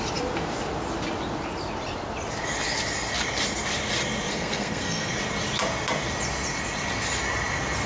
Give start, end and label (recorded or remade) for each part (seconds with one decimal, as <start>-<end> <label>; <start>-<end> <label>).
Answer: 0.0-4.3 recorded; 4.3-5.1 remade; 5.1-7.9 recorded